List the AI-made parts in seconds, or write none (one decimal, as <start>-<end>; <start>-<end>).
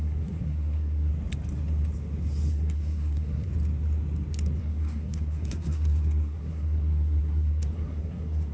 0.0-1.1; 2.5-3.5; 4.6-8.5